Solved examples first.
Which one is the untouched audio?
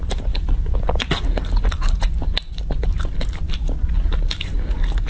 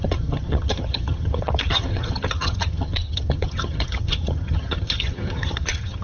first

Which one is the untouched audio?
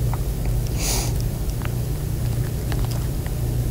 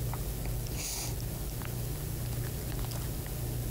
second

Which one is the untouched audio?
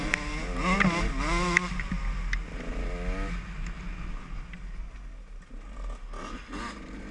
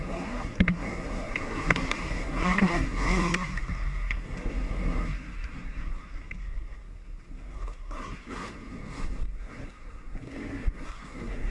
first